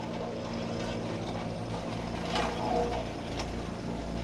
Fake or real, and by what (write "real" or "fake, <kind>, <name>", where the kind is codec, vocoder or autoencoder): real